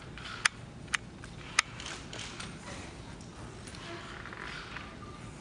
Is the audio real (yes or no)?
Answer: yes